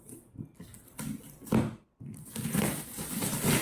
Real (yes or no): yes